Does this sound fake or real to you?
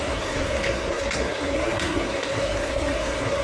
fake